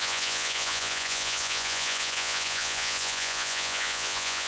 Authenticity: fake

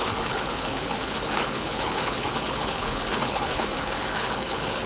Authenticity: fake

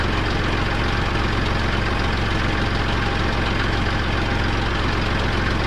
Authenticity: real